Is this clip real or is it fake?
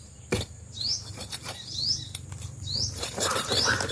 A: fake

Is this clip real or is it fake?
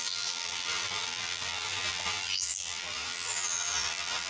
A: fake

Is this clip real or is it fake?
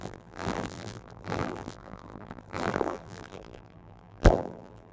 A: fake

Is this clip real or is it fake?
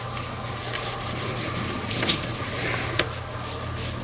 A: real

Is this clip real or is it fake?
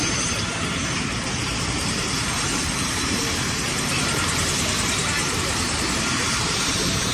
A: fake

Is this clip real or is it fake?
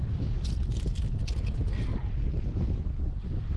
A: real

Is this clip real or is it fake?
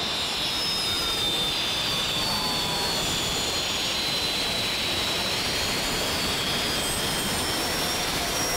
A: fake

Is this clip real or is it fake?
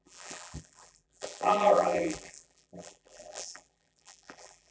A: fake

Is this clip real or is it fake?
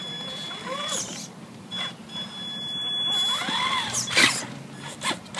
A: real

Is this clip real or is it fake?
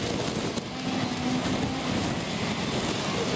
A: real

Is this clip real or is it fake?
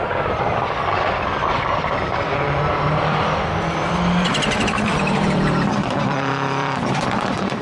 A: fake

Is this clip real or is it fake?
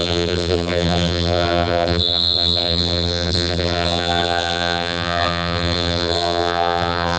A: fake